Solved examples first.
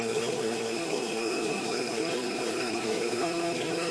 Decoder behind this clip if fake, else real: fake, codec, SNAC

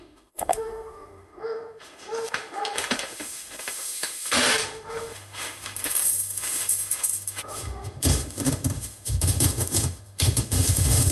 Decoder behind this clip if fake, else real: fake, autoencoder, DAC-VAE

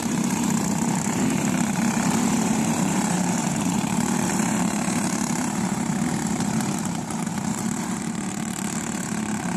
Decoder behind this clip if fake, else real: fake, vocoder, BigVGAN v2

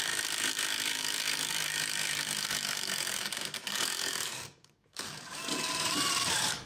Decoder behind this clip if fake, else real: fake, codec, DAC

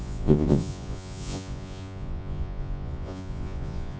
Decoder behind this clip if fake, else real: fake, vocoder, Vocos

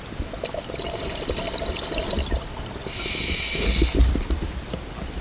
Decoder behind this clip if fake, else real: real